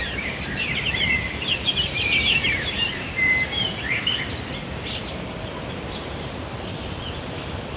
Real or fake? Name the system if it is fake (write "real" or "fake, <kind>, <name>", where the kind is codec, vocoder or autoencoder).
fake, vocoder, BigVGAN v2